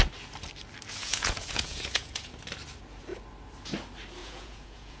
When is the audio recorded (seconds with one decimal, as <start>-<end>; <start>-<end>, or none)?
0.0-1.0; 2.3-4.2